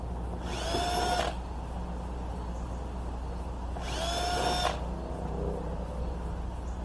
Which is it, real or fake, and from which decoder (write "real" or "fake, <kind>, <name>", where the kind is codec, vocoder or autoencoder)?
real